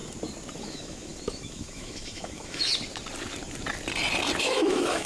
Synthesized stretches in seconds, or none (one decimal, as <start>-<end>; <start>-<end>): 0.6-2.7; 4.4-5.1